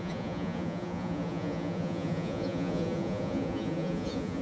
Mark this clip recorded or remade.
remade